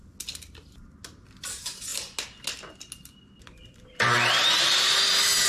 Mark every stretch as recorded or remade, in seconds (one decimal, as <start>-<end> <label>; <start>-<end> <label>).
0.0-3.6 recorded; 3.6-4.7 remade; 4.7-5.5 recorded